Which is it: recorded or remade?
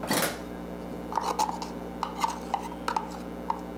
recorded